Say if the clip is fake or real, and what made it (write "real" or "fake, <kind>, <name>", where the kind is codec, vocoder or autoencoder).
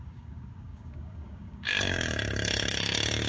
fake, codec, DAC